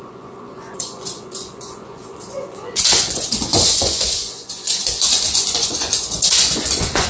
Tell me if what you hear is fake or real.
fake